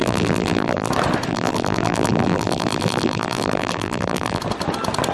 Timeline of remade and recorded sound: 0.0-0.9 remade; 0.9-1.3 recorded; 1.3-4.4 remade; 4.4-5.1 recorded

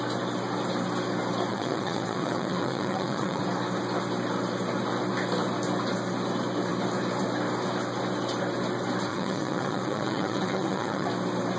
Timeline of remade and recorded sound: 0.0-1.5 recorded; 1.5-3.4 remade; 3.4-9.1 recorded; 9.1-11.1 remade; 11.1-11.6 recorded

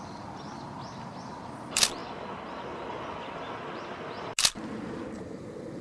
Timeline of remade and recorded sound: 0.0-2.0 remade; 2.0-4.5 recorded; 4.5-5.8 remade

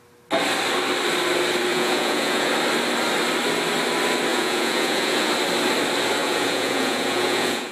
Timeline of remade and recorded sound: 0.0-1.7 recorded; 1.7-2.5 remade; 2.5-4.3 recorded; 4.3-5.3 remade; 5.3-6.2 recorded; 6.2-7.7 remade

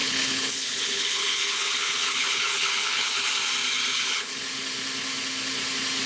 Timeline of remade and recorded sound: 0.0-3.4 remade; 3.4-3.9 recorded; 3.9-4.4 remade; 4.4-6.1 recorded

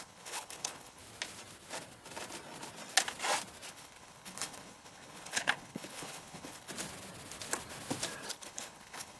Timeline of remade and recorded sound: 0.0-1.0 remade; 1.0-3.7 recorded; 3.7-6.7 remade; 6.7-8.3 recorded; 8.3-9.2 remade

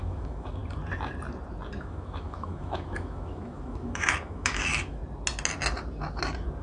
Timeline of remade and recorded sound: 0.0-0.6 remade; 0.6-1.8 recorded; 1.8-5.0 remade; 5.0-6.6 recorded